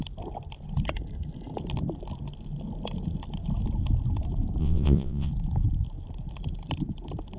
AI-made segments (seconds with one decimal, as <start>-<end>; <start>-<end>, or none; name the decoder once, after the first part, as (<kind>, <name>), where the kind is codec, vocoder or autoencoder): 4.6-5.3 (vocoder, WaveNeXt)